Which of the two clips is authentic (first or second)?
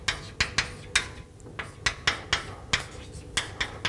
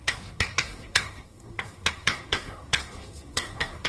first